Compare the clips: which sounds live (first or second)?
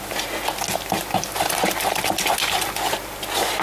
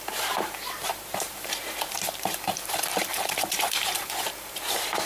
first